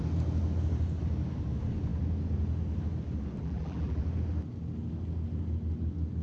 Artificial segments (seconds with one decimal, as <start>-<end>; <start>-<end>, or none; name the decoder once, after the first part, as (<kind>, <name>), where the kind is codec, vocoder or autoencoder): 3.4-4.0 (vocoder, BigVGAN v2)